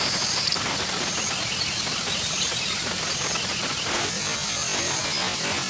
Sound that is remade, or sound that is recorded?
recorded